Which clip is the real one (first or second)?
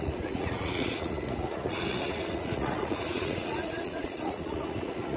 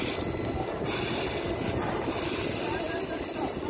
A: second